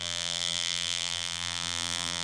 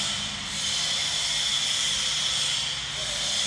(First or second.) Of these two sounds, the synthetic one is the first